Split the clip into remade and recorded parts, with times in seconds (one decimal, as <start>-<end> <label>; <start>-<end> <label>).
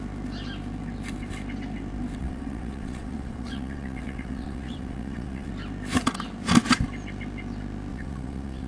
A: 0.0-2.2 recorded; 2.2-5.5 remade; 5.5-7.9 recorded; 7.9-8.7 remade